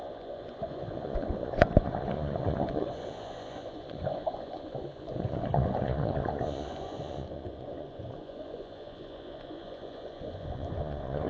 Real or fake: fake